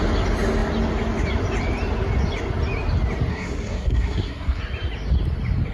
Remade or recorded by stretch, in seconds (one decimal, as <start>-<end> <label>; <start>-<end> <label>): 0.0-3.3 recorded; 3.3-4.6 remade; 4.6-5.7 recorded